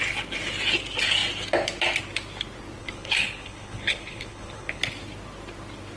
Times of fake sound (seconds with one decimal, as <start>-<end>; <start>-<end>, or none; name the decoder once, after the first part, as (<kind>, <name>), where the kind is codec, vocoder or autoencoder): 2.8-4.8 (codec, HILCodec)